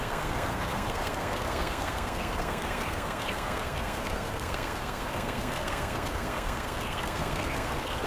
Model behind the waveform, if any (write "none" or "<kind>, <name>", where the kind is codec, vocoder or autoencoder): codec, SNAC